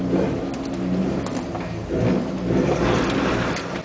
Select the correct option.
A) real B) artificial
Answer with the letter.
A